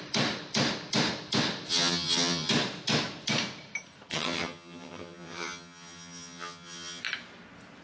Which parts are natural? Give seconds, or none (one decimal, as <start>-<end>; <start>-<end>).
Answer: 0.0-1.7; 2.5-4.1; 7.0-7.8